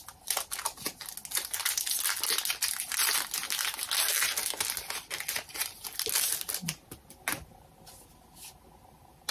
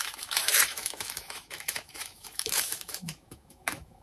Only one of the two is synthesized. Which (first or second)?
second